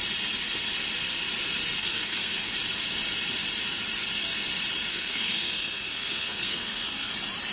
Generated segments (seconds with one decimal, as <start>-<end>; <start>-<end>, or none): 1.8-2.5; 4.9-7.1